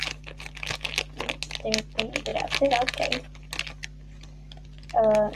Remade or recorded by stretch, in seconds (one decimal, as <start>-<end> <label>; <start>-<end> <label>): 0.0-5.4 recorded

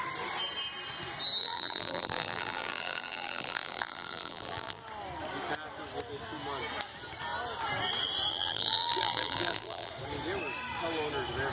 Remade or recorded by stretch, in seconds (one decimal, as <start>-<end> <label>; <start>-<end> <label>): 0.0-1.4 recorded; 1.4-4.8 remade; 4.8-8.3 recorded; 8.3-9.9 remade; 9.9-11.5 recorded

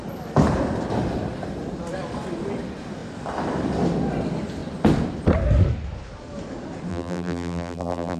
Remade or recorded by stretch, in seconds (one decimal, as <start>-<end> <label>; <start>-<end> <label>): 0.0-6.9 recorded; 6.9-8.2 remade

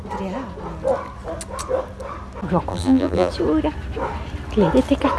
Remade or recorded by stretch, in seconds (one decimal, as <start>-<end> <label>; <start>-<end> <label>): 0.0-2.7 recorded; 2.7-3.3 remade; 3.3-5.2 recorded

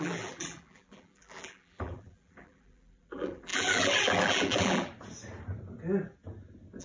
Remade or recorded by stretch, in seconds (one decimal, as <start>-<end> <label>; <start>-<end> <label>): 0.0-4.9 remade; 4.9-6.8 recorded

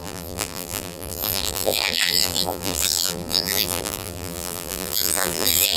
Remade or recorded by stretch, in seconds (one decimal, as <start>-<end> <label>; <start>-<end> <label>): 0.0-5.8 remade

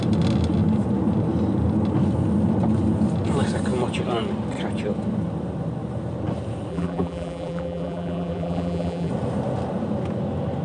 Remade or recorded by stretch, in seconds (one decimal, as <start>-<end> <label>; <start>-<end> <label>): 0.0-6.7 recorded; 6.7-9.1 remade; 9.1-10.6 recorded